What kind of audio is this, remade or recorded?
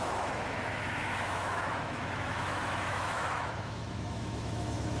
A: remade